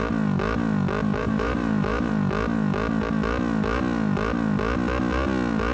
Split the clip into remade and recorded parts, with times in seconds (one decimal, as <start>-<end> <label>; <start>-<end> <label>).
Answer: 0.0-1.2 recorded; 1.2-2.1 remade; 2.1-5.7 recorded